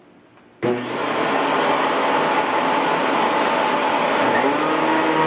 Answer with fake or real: real